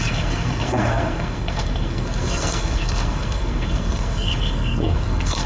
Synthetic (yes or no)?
yes